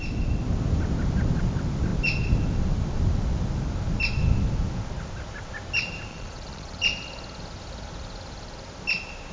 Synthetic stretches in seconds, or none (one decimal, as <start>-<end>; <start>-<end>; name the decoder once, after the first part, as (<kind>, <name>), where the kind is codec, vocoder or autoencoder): 6.1-6.8 (vocoder, Vocos)